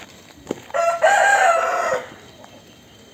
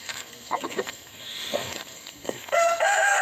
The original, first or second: first